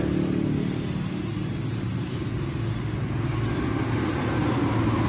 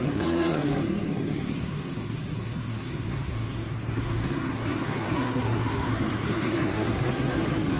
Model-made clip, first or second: second